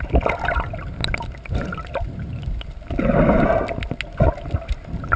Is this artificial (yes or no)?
no